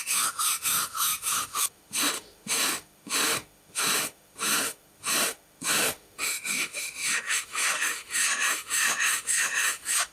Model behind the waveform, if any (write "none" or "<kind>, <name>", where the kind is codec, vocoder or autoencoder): autoencoder, DAC-VAE